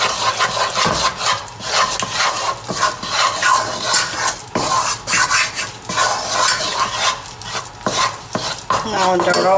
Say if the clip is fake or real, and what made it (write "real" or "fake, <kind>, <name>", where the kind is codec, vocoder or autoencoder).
real